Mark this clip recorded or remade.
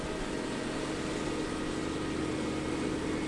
recorded